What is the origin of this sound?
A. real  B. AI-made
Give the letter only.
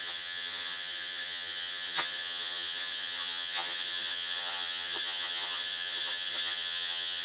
B